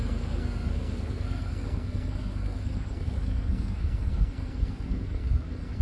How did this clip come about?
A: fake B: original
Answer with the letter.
A